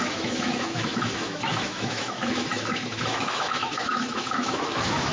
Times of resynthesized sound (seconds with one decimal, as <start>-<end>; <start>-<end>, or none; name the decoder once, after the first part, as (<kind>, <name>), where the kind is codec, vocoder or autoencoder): 0.0-5.1 (autoencoder, DAC-VAE)